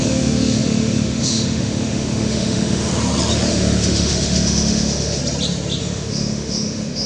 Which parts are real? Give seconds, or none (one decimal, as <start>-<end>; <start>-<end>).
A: 2.9-3.5; 5.2-5.8